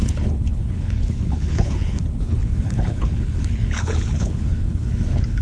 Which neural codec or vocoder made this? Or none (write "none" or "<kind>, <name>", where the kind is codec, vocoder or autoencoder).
codec, HILCodec